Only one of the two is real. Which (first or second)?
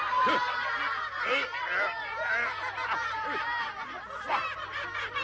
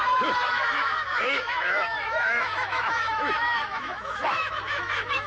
first